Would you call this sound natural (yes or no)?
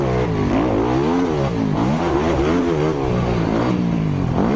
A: yes